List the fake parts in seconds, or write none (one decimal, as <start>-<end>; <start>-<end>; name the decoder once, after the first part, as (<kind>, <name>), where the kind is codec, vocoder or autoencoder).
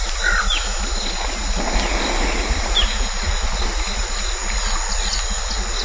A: none